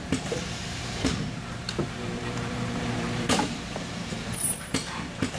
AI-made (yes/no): yes